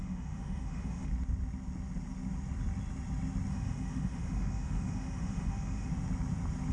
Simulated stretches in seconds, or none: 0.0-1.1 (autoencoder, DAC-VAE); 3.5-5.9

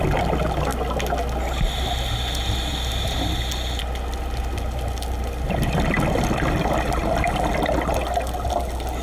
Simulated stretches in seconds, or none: none

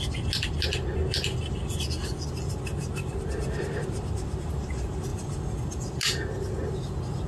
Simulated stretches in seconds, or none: 5.1-5.9 (vocoder, BigVGAN v2)

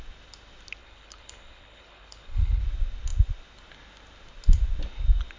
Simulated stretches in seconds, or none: 0.8-2.6 (codec, HILCodec)

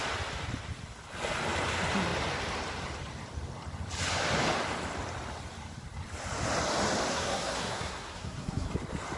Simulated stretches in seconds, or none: 7.1-8.7 (codec, SNAC)

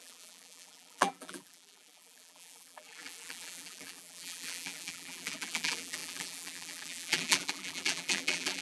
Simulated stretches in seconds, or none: 0.0-8.6 (vocoder, BigVGAN v2)

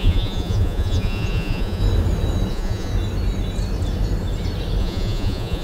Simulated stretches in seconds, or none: 0.0-1.8 (vocoder, Vocos); 2.5-2.9; 4.8-5.6

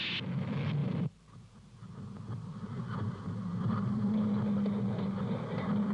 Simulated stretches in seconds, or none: 0.8-4.3 (vocoder, BigVGAN v2)